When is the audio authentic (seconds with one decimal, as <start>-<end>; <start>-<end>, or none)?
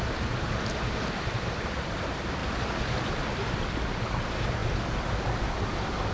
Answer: 0.0-6.1